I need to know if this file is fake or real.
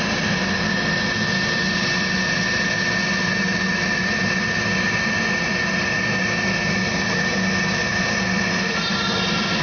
real